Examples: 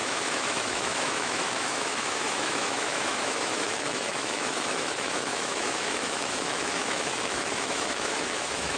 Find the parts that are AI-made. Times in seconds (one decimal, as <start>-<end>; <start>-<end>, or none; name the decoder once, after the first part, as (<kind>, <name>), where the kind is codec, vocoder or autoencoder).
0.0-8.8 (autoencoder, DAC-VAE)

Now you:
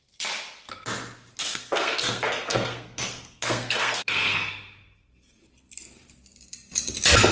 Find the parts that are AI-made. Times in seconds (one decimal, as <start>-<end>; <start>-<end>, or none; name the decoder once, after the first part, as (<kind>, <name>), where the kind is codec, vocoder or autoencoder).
1.4-4.5 (codec, SNAC)

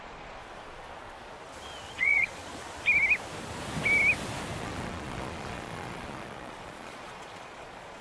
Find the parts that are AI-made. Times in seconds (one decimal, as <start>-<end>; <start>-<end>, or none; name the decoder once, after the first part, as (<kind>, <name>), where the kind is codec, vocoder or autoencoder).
0.0-0.4 (vocoder, Vocos); 1.9-2.4; 4.6-8.0